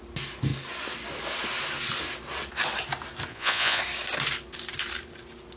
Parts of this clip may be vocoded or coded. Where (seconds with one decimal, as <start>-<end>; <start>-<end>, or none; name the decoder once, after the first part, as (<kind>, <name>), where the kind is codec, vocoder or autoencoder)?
3.3-3.8 (vocoder, Vocos)